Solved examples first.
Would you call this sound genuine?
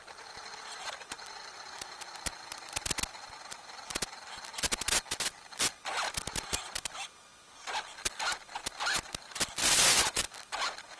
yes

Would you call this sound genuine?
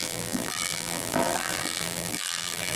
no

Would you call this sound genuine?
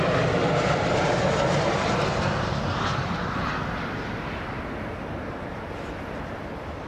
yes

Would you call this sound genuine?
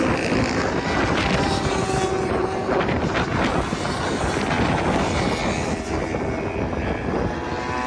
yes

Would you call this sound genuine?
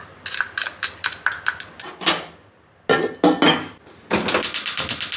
yes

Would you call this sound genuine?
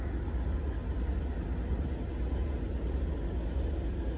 yes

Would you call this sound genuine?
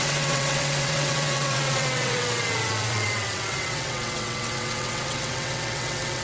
no